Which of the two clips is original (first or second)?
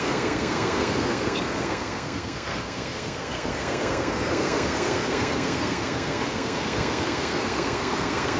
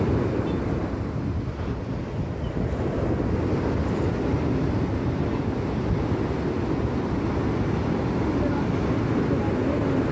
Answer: second